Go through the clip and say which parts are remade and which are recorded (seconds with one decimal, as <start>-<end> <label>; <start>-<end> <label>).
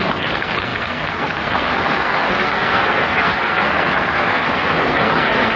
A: 0.0-5.6 remade